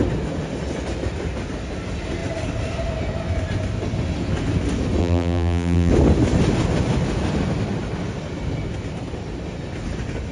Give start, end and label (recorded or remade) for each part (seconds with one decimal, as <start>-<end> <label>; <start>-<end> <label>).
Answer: 0.0-5.0 recorded; 5.0-5.9 remade; 5.9-10.3 recorded